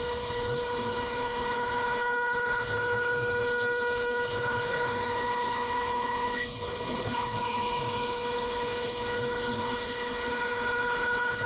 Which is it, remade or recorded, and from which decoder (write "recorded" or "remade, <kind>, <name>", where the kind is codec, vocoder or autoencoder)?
remade, codec, HILCodec